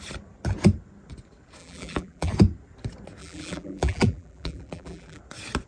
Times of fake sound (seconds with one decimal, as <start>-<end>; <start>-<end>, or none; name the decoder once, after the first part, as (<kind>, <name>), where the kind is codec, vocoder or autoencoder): 1.6-2.3 (vocoder, BigVGAN v2); 3.2-5.2

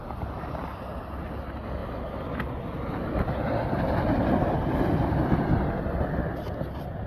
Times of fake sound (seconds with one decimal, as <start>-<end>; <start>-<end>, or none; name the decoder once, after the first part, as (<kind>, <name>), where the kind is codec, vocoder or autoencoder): none

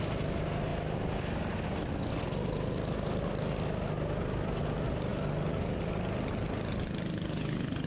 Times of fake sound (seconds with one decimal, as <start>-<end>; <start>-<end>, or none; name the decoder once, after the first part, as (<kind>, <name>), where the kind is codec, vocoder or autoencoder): none

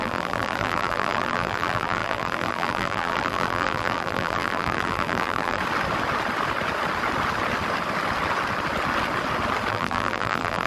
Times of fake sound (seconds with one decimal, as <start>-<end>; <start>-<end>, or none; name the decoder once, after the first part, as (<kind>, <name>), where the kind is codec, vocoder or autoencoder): 0.0-5.6 (vocoder, BigVGAN v2); 9.7-10.7

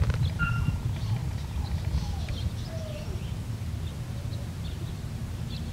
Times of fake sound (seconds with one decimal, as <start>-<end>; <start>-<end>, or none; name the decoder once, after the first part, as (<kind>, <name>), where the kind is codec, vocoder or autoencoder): 4.3-4.8 (vocoder, BigVGAN v2)

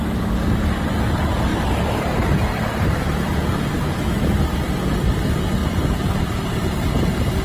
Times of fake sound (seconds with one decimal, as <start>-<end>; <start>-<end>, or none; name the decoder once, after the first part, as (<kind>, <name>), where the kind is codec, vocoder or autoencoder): 1.5-3.1 (vocoder, BigVGAN v2); 3.7-4.5; 5.6-7.4

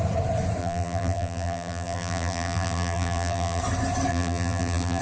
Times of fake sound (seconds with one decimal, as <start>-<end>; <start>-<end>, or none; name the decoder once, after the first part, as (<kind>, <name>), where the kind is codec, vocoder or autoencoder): 0.6-3.6 (vocoder, BigVGAN v2); 4.1-5.0